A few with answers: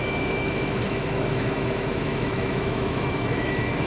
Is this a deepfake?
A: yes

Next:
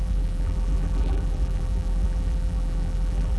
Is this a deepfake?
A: yes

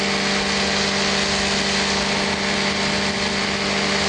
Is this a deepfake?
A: no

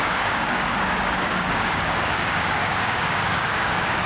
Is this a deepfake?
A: yes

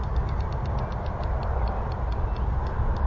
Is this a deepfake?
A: no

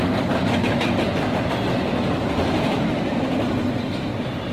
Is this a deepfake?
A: no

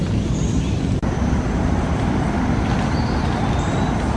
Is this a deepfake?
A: no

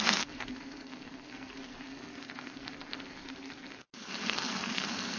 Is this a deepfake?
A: yes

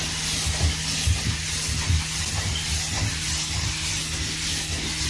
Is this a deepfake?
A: no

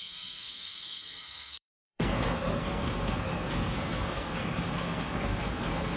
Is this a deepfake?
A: yes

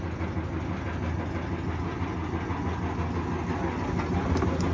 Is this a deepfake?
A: no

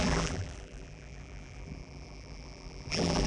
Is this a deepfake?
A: yes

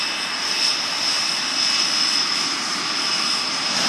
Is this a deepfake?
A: no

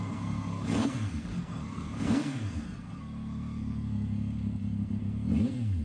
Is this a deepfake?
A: yes